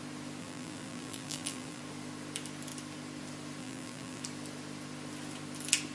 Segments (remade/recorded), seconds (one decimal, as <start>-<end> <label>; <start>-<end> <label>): 0.0-0.4 recorded; 0.4-1.8 remade; 1.8-3.6 recorded; 3.6-4.2 remade; 4.2-5.9 recorded